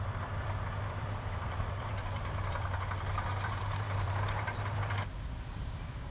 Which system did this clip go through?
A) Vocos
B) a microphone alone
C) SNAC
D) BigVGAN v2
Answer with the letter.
D